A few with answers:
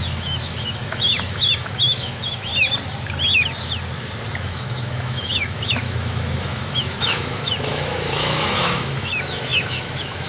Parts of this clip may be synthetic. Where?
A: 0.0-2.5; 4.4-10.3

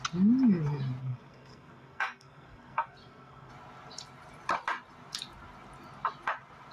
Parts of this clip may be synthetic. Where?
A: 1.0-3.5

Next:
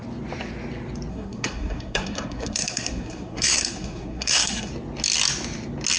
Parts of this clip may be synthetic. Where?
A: 1.1-4.7

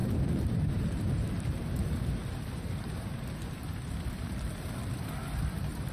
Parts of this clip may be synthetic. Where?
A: 0.0-5.9

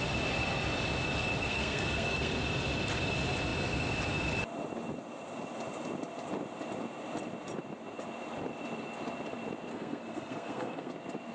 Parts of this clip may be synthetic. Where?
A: 1.4-2.3; 9.7-10.9